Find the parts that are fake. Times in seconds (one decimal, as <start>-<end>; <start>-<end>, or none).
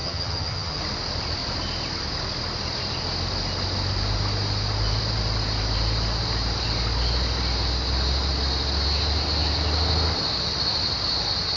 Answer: 0.0-0.8